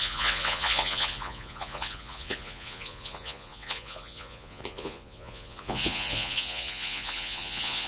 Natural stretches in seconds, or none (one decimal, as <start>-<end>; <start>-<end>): none

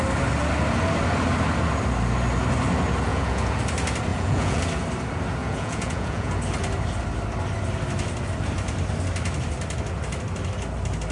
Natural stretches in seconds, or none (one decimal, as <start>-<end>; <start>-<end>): 0.0-3.1; 3.6-4.1; 4.6-5.4; 6.3-11.1

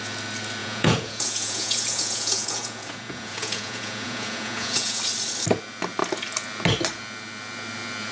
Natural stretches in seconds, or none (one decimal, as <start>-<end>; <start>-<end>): 0.0-0.6; 5.0-8.1

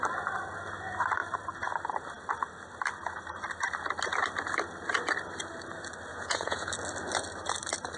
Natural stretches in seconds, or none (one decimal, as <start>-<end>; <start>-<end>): 0.0-6.1; 6.7-8.0

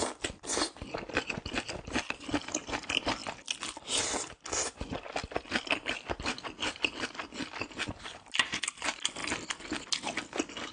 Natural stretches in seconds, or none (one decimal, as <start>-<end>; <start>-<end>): 0.0-10.7

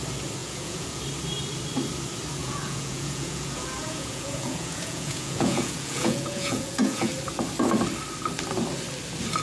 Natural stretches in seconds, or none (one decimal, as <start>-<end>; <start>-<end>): 0.0-0.4; 1.0-2.4; 7.1-9.4

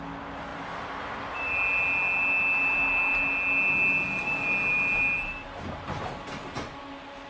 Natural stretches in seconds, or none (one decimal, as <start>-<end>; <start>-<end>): 0.0-7.3

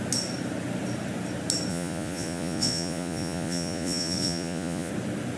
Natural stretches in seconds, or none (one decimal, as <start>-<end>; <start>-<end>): 0.0-1.7; 4.9-5.4